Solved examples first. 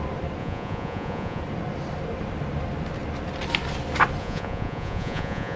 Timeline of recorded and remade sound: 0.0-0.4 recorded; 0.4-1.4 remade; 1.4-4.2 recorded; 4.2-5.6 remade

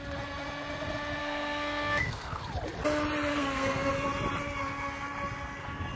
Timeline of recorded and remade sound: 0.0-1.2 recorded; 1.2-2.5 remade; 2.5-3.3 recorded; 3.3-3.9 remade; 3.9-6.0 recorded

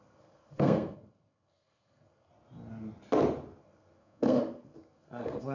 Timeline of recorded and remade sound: 0.0-2.3 remade; 2.3-3.6 recorded; 3.6-5.5 remade

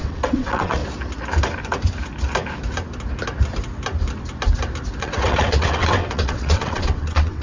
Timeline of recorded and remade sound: 0.0-0.8 remade; 0.8-5.0 recorded; 5.0-7.4 remade

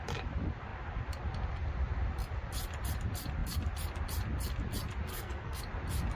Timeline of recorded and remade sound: 0.0-5.1 recorded; 5.1-5.6 remade; 5.6-6.1 recorded

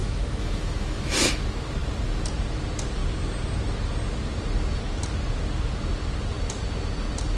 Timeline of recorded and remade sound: 0.0-1.3 remade; 1.3-7.4 recorded